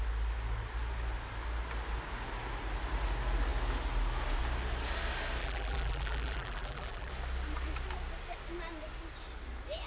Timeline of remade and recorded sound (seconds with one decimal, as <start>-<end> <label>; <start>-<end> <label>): 0.0-5.4 recorded; 5.4-7.1 remade; 7.1-9.9 recorded